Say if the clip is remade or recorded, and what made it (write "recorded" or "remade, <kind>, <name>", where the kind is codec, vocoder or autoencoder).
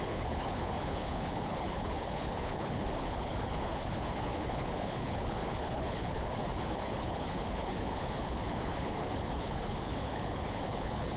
remade, codec, HILCodec